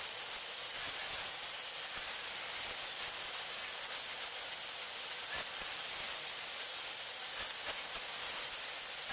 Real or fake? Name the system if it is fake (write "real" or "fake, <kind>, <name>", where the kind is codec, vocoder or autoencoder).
real